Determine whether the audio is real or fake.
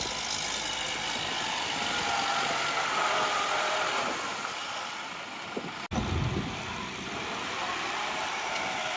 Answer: real